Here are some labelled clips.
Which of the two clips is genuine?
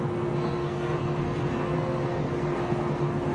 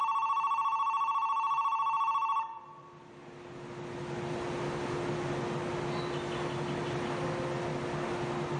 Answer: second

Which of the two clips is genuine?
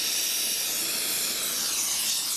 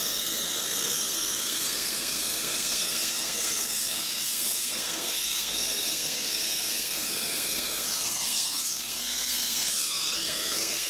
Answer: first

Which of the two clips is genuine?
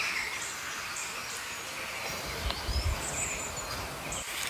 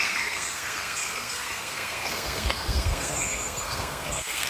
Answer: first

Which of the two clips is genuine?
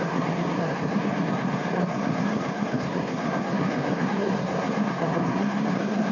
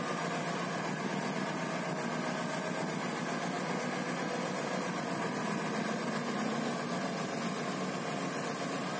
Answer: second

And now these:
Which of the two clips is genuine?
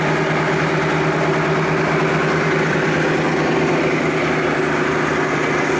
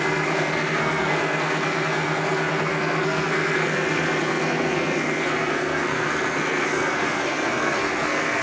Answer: first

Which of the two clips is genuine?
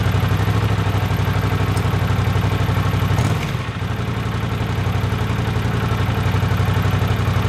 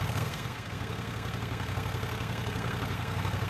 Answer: first